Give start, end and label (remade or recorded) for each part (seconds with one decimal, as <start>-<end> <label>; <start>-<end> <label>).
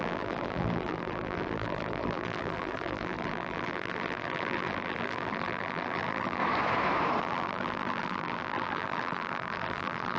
0.0-6.4 remade; 6.4-7.2 recorded; 7.2-10.2 remade